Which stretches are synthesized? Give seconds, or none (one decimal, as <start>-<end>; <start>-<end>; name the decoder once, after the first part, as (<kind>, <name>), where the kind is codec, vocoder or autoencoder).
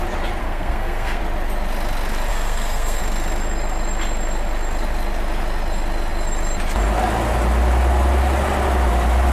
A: 0.4-1.2 (codec, SNAC); 2.3-3.0